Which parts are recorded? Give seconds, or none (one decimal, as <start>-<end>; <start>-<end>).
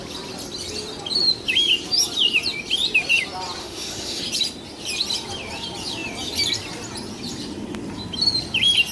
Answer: 0.0-3.6; 4.2-8.9